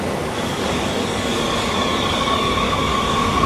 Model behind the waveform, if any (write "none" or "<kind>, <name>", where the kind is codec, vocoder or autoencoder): codec, DAC